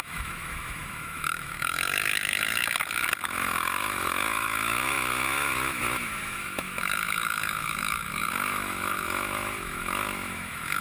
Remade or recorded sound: remade